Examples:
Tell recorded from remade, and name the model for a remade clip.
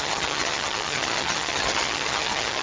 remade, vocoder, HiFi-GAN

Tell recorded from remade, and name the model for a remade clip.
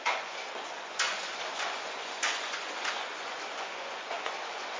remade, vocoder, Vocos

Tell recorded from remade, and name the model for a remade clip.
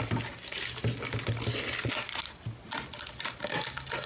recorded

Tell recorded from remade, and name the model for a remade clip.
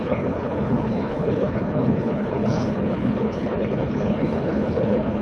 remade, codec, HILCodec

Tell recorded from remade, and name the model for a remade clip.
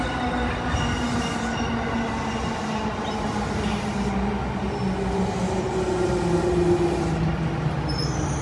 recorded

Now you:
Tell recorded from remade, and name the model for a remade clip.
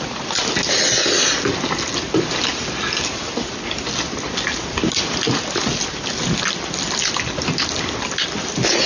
recorded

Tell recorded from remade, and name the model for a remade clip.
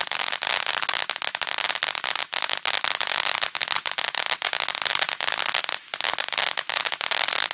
recorded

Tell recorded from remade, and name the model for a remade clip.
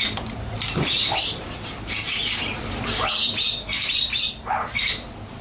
remade, vocoder, BigVGAN v2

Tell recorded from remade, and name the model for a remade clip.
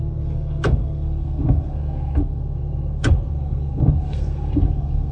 remade, codec, SNAC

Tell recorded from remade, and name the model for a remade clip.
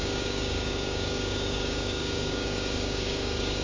remade, codec, DAC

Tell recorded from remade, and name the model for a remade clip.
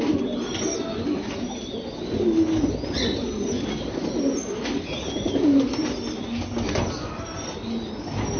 recorded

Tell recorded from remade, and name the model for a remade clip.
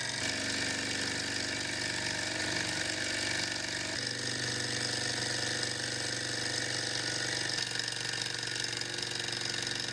recorded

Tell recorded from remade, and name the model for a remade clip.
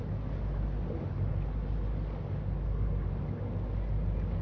recorded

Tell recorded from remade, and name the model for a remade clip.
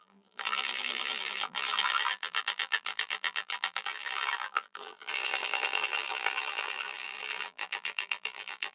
remade, vocoder, BigVGAN v2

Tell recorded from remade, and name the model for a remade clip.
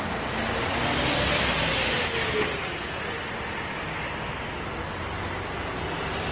recorded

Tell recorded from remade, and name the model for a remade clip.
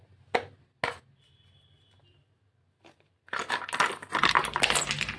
recorded